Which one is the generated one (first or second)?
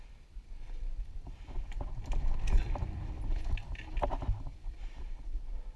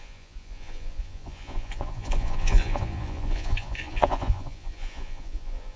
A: second